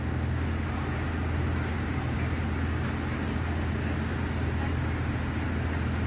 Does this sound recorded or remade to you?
recorded